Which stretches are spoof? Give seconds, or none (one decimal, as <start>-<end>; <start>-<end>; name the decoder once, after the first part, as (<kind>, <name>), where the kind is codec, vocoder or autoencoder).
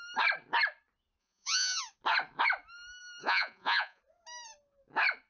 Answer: 1.2-1.8 (vocoder, Vocos); 3.2-4.0